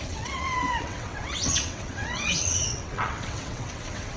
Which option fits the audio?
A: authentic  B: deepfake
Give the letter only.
B